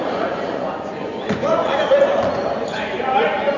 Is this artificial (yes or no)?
yes